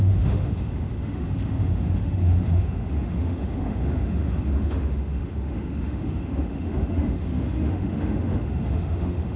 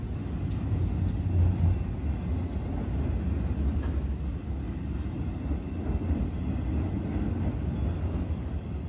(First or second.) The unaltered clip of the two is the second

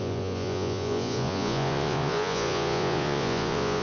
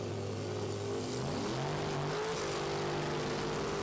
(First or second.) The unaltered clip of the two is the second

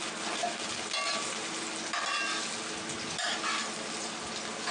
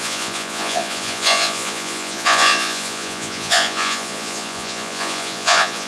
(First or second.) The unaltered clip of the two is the first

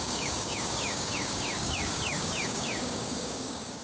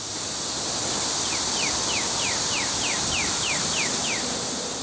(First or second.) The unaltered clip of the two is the second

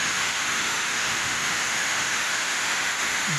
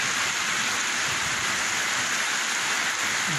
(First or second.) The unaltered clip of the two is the second